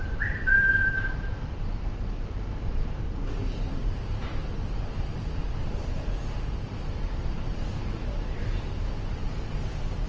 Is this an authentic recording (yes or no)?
no